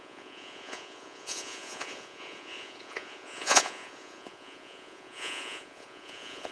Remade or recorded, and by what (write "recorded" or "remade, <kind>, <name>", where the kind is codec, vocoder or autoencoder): remade, vocoder, Vocos